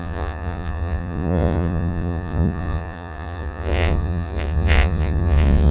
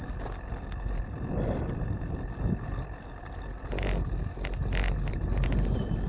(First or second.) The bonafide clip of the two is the second